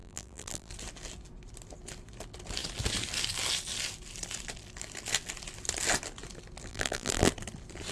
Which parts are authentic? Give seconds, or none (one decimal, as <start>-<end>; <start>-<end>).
0.7-6.7; 7.3-7.9